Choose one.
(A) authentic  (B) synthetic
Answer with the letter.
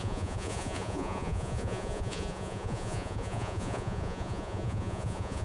B